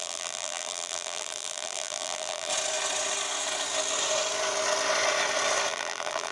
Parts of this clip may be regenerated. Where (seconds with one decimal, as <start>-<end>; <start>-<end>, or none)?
0.0-2.5; 5.7-6.3